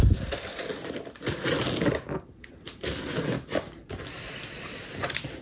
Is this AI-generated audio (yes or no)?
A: no